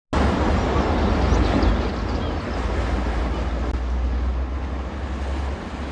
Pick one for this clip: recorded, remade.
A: recorded